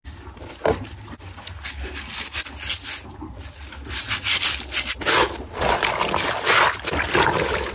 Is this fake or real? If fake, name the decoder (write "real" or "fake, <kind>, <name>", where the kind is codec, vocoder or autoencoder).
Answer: real